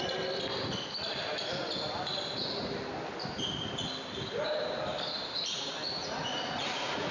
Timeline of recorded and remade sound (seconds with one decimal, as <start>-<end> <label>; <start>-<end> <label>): 0.0-6.0 recorded; 6.0-7.1 remade